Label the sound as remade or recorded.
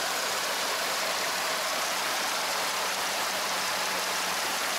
remade